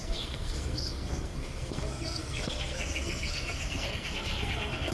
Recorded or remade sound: remade